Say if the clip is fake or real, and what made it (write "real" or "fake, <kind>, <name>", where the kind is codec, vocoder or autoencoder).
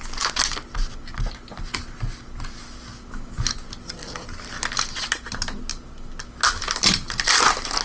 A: real